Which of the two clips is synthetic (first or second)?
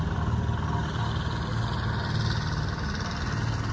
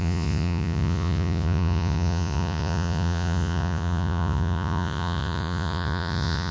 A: second